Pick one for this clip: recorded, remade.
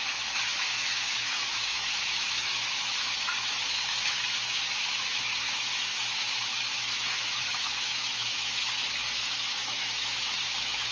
remade